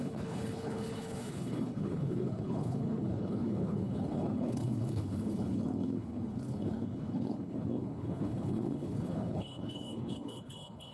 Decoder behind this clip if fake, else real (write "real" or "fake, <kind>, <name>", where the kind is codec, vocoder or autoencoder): fake, codec, HILCodec